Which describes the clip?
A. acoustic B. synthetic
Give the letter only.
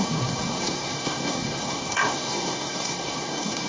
B